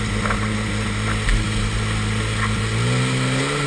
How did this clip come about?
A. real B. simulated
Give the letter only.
A